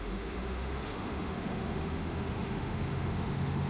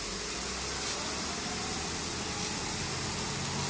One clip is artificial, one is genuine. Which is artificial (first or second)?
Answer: first